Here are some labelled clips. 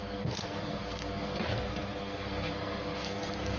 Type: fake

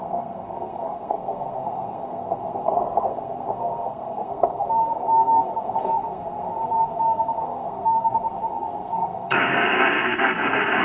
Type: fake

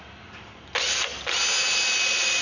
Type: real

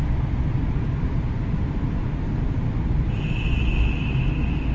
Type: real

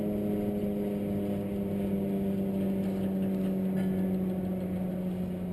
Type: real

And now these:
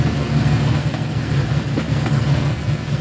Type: fake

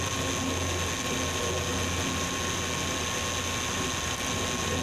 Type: real